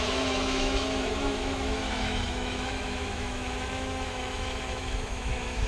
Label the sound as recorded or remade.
remade